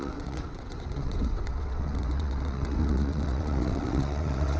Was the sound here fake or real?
fake